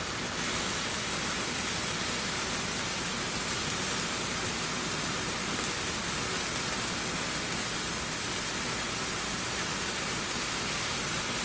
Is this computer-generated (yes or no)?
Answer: no